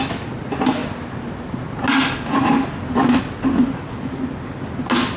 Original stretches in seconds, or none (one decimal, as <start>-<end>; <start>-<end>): 0.0-5.2

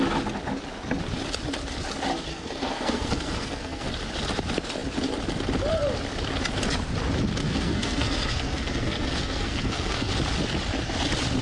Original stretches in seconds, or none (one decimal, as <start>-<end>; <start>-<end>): 0.0-2.3; 3.9-7.4; 10.1-11.4

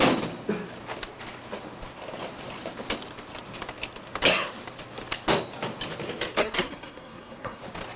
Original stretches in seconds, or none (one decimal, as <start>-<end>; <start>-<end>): 0.0-6.4; 7.6-8.0

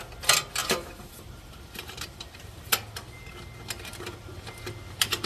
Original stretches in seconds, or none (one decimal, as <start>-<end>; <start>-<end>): 0.0-0.6; 2.7-5.3